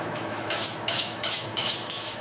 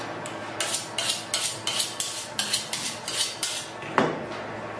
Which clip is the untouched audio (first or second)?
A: second